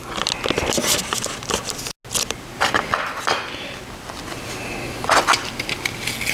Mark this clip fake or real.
real